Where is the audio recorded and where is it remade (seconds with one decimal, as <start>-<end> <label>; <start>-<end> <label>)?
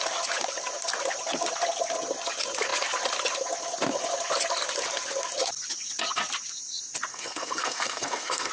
0.0-7.1 recorded; 7.1-8.5 remade